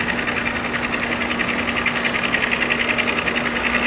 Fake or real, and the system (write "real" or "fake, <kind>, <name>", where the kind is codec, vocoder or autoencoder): real